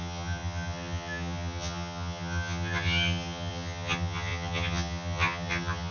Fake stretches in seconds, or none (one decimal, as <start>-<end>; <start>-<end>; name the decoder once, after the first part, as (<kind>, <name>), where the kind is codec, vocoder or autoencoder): 0.0-5.9 (vocoder, HiFi-GAN)